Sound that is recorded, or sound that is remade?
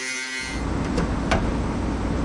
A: recorded